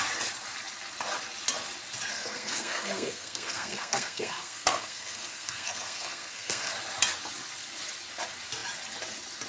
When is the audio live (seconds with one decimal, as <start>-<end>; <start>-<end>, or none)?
0.0-2.1; 6.7-9.5